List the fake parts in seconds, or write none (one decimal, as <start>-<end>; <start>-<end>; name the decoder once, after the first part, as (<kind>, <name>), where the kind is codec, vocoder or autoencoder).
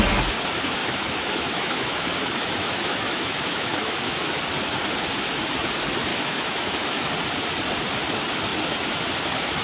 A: 0.8-4.4 (autoencoder, DAC-VAE); 6.1-7.1